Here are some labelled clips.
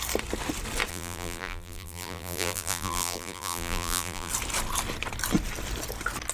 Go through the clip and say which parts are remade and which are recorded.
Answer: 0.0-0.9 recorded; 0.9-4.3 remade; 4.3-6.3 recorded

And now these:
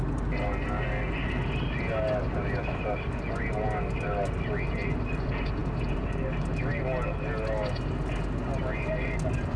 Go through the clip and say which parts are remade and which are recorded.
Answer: 0.0-9.6 recorded

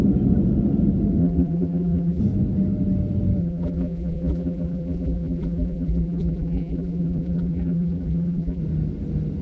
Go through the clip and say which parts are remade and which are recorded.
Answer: 0.0-1.2 recorded; 1.2-2.2 remade; 2.2-3.4 recorded; 3.4-8.6 remade; 8.6-9.4 recorded